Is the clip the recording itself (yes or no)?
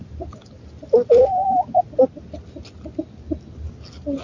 yes